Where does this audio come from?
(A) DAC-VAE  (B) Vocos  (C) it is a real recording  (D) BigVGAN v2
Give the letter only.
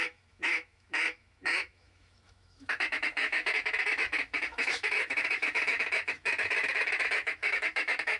A